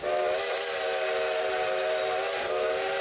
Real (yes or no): yes